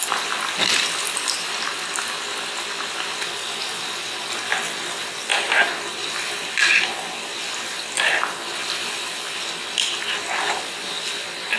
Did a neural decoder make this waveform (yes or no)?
no